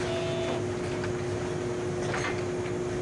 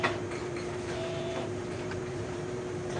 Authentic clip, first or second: first